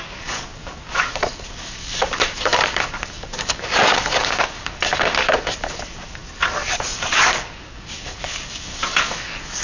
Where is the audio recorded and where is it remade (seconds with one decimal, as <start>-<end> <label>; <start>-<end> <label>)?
0.0-9.6 remade